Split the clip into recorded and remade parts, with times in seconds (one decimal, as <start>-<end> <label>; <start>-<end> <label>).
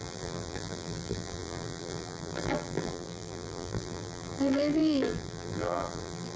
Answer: 0.0-6.4 remade